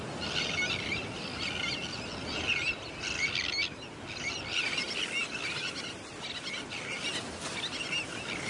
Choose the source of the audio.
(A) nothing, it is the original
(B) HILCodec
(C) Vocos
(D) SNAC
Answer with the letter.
A